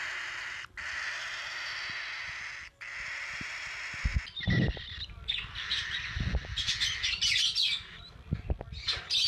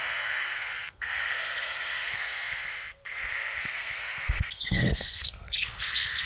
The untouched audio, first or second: first